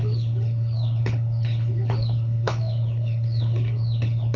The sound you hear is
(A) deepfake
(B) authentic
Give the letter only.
A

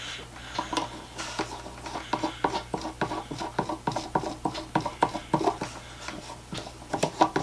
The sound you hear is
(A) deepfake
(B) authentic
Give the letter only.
B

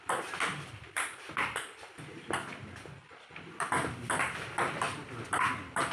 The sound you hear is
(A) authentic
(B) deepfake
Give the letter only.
B